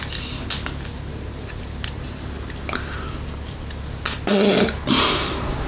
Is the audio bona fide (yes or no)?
yes